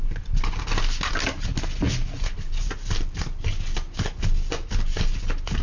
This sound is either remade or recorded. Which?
recorded